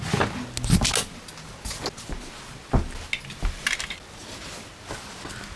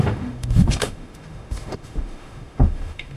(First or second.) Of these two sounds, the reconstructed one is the second